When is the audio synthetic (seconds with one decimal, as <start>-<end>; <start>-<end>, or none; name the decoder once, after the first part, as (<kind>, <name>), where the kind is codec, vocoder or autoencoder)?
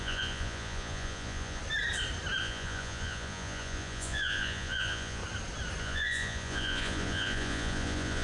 0.0-1.6 (vocoder, Vocos); 2.4-5.2; 5.8-8.2